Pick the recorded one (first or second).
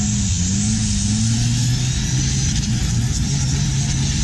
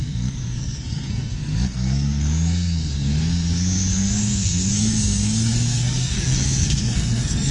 first